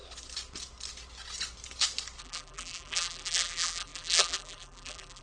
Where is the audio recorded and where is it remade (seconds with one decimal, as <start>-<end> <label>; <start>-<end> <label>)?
0.0-2.2 recorded; 2.2-5.2 remade